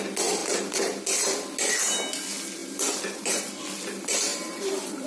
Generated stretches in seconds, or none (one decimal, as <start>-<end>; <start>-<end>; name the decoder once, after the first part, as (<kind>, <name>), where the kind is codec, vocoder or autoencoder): 0.4-1.0 (vocoder, BigVGAN v2); 2.6-3.4; 4.3-5.1